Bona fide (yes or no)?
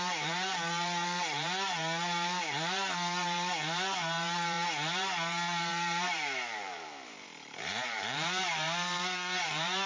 no